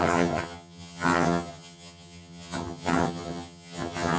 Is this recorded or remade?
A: remade